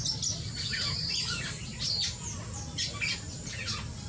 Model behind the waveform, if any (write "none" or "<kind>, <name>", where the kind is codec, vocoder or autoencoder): none